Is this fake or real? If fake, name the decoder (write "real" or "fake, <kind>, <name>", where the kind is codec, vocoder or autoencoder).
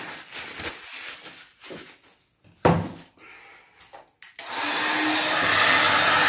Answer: real